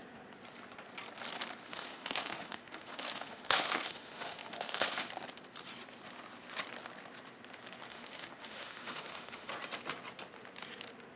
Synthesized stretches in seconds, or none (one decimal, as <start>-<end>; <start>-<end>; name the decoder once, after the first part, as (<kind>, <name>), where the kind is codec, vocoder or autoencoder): 1.6-5.1 (autoencoder, DAC-VAE); 7.9-9.5

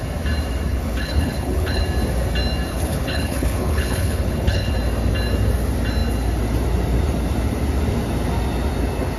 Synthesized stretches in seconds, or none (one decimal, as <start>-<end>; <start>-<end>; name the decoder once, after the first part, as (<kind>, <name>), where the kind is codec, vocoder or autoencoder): 0.7-1.8 (codec, HILCodec); 2.7-4.7

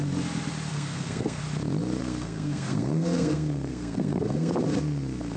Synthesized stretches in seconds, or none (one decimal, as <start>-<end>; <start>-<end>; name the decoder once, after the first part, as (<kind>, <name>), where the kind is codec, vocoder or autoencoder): 0.7-1.4 (codec, SNAC); 2.0-4.5

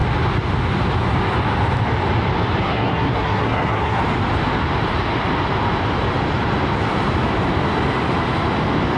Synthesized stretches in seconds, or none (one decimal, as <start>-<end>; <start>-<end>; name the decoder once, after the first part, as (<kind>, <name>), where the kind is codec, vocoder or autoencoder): 2.6-4.0 (codec, SNAC)

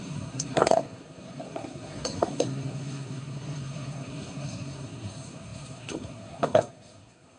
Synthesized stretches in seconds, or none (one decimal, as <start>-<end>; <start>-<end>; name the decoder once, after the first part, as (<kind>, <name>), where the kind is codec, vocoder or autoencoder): 0.0-7.4 (codec, SNAC)

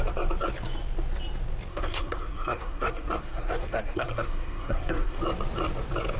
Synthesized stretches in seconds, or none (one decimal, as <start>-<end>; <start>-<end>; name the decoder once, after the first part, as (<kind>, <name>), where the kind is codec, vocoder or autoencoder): 1.7-5.2 (codec, SNAC)